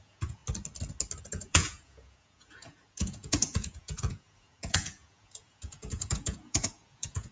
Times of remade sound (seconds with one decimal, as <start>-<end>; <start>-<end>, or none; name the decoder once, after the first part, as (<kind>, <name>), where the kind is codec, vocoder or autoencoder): 0.0-0.4 (vocoder, Vocos); 1.2-7.3